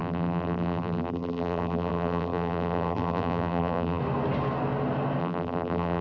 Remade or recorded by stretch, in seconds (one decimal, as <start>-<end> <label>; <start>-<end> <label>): 0.0-4.0 remade; 4.0-5.2 recorded; 5.2-6.0 remade